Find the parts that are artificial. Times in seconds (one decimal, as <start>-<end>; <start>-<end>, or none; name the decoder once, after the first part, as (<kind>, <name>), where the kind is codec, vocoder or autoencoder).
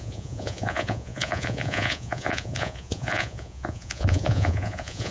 0.0-5.1 (vocoder, Vocos)